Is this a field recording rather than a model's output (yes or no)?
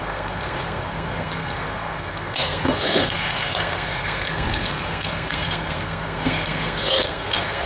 no